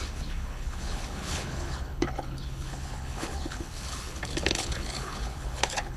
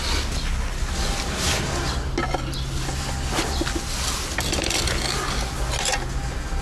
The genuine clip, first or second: second